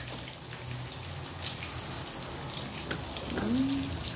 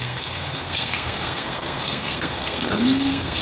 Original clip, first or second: first